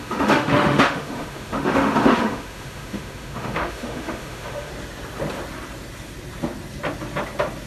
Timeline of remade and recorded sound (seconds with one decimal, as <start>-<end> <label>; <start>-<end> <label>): 0.0-4.7 remade; 4.7-7.7 recorded